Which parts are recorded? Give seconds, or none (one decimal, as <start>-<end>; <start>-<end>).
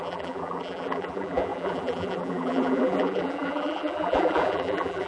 none